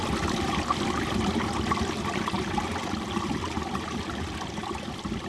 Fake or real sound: real